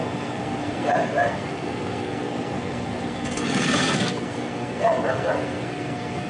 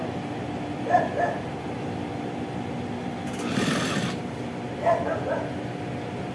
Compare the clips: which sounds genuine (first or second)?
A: second